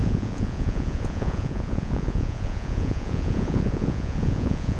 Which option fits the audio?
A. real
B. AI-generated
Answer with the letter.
B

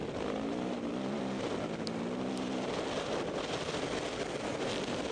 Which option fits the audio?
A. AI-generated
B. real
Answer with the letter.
B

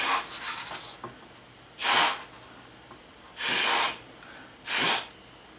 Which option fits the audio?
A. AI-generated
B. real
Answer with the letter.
B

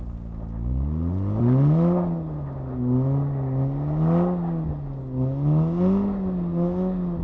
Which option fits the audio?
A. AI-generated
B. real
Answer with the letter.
B